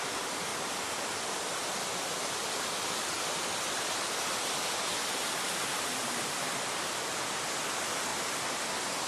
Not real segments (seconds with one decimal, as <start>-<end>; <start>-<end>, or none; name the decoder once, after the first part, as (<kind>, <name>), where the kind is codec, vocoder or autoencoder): none